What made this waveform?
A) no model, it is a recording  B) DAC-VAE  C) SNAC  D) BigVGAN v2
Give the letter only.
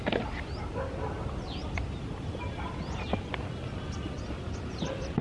A